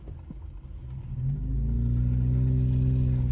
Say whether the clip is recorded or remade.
recorded